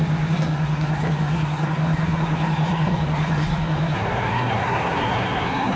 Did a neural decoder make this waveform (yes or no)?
yes